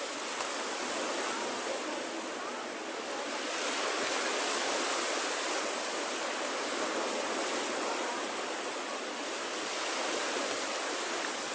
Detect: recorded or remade recorded